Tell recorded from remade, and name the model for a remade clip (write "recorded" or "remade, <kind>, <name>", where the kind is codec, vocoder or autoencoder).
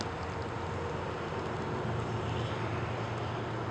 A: recorded